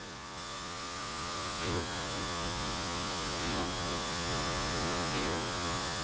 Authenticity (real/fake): fake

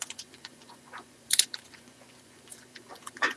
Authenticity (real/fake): fake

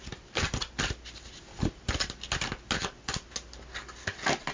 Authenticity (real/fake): real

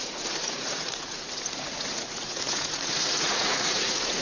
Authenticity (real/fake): fake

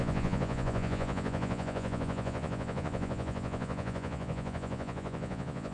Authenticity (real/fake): fake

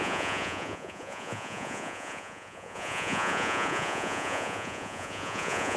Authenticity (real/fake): fake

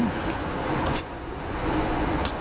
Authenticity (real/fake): fake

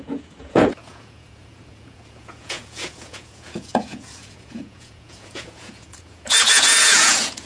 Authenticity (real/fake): fake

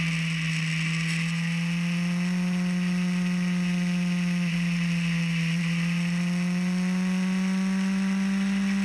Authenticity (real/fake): real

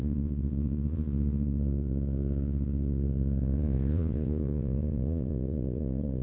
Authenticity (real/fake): fake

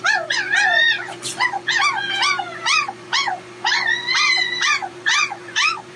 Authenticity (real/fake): fake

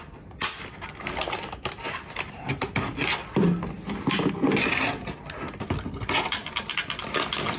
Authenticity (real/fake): real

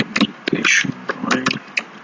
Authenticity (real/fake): real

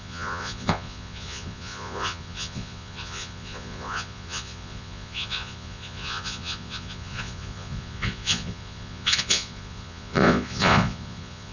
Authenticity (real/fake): fake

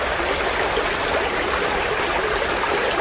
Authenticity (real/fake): real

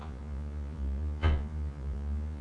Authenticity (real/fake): fake